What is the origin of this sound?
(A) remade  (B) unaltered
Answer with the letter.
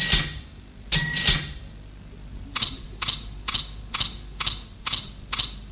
B